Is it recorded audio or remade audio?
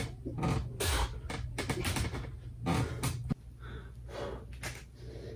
recorded